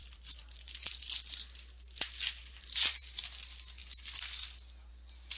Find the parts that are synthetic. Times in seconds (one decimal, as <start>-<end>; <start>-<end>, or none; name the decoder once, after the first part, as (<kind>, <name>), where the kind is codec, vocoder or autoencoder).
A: 0.0-1.0 (vocoder, BigVGAN v2); 2.4-3.2